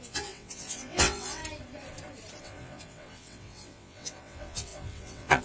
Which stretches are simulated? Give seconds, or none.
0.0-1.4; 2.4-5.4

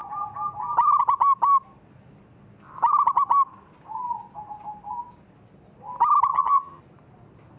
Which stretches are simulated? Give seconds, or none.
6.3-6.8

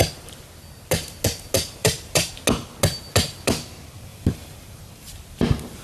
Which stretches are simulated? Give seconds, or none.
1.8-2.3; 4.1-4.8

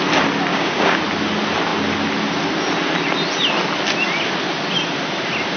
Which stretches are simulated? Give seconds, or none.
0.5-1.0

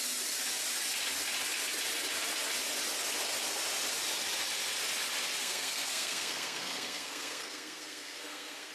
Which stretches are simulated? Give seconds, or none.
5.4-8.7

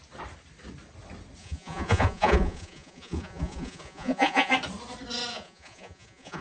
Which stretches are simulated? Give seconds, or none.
1.4-4.5; 5.3-6.4